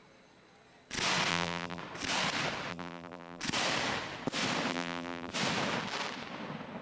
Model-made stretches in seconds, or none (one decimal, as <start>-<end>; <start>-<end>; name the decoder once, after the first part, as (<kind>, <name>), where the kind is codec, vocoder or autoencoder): 1.3-1.8 (vocoder, BigVGAN v2); 2.7-3.4; 4.7-5.3